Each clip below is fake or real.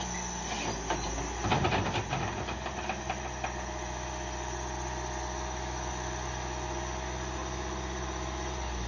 real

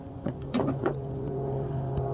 fake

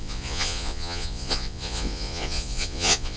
fake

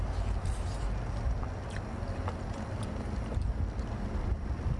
real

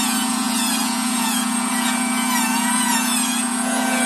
fake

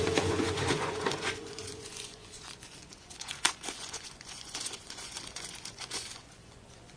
fake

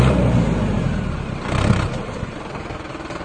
real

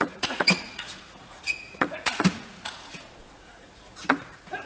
fake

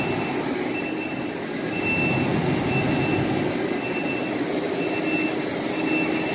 real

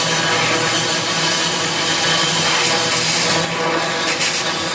real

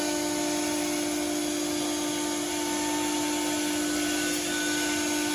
real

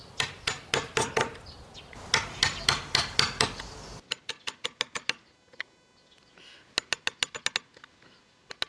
real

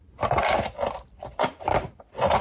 real